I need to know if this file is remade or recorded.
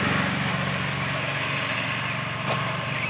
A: recorded